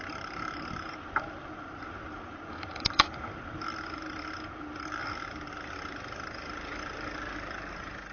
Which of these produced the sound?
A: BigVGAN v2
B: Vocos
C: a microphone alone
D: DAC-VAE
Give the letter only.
A